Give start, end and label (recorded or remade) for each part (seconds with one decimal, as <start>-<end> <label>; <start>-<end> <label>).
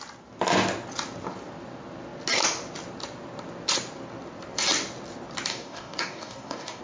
0.0-5.5 recorded; 5.5-6.8 remade